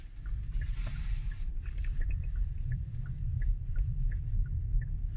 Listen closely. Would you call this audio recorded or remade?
remade